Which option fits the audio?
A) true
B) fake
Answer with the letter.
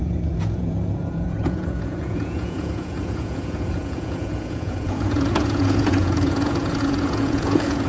B